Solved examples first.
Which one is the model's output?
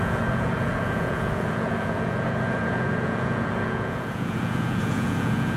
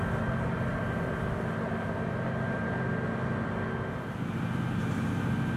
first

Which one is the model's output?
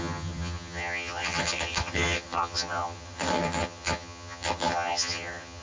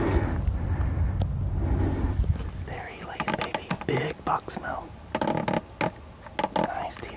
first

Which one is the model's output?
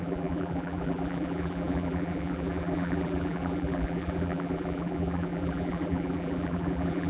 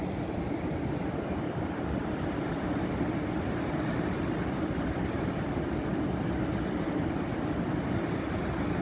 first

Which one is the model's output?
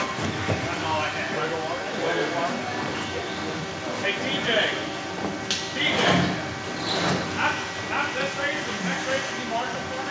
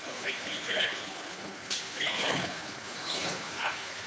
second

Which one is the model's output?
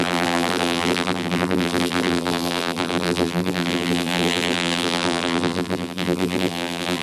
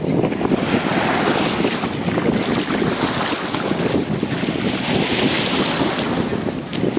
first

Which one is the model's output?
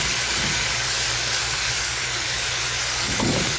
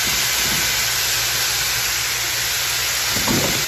first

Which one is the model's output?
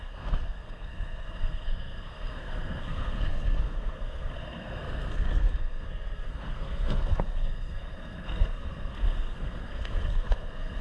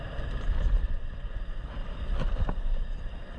first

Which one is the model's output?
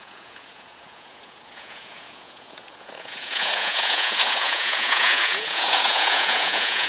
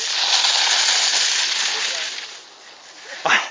first